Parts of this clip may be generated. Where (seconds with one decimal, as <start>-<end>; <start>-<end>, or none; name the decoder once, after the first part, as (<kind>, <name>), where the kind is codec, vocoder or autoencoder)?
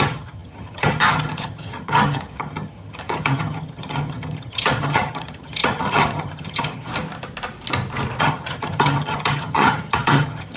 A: 0.0-6.9 (vocoder, HiFi-GAN); 8.2-10.6